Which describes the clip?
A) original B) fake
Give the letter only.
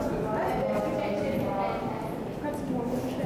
A